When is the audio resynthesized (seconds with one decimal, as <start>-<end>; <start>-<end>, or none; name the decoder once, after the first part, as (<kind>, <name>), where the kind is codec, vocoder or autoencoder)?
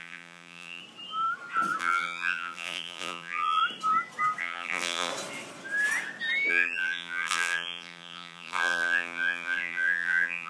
0.0-0.8 (vocoder, BigVGAN v2); 1.8-3.6; 4.4-5.1; 6.5-10.5